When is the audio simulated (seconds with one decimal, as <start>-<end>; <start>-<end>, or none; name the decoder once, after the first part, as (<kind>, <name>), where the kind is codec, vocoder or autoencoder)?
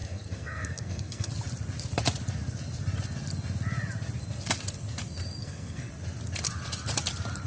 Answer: 0.0-1.3 (codec, SNAC); 5.4-5.9